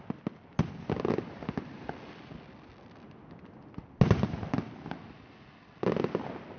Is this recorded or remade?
recorded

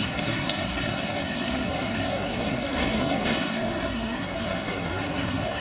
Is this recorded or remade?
remade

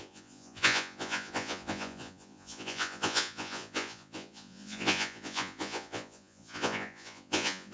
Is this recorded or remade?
remade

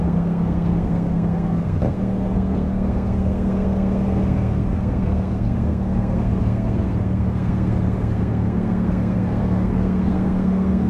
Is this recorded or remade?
remade